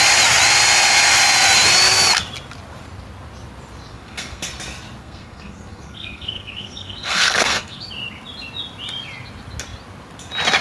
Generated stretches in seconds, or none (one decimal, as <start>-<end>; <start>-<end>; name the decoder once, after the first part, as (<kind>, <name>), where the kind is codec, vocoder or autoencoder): 3.9-4.5 (codec, SNAC); 5.0-7.9